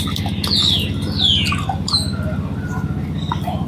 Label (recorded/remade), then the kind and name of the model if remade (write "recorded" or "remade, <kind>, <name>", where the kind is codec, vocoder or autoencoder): recorded